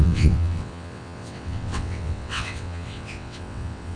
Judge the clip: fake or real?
fake